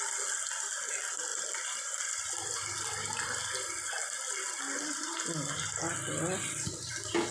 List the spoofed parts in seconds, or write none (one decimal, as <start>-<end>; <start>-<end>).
1.3-3.4

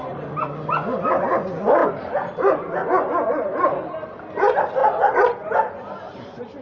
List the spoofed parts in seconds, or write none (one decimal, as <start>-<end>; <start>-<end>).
none

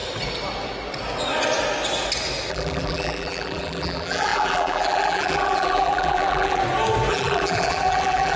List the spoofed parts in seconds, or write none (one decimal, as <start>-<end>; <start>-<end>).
2.5-6.6; 7.1-8.4

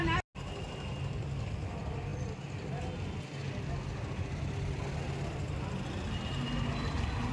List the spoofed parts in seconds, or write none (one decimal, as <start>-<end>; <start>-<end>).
none

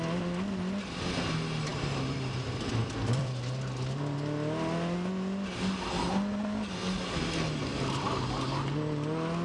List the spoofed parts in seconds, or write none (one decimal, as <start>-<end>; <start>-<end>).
1.7-3.4

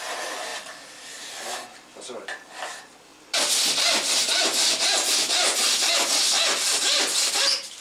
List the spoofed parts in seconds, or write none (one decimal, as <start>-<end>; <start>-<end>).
0.5-2.2; 3.1-6.1